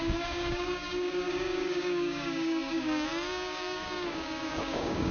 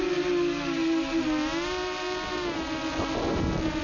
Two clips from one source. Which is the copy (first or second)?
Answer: first